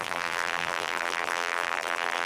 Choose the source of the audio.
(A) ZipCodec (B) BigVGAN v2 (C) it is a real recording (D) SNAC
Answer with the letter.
B